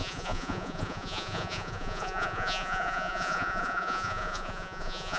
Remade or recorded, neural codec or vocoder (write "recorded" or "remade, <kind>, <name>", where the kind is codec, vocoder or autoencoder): remade, vocoder, Vocos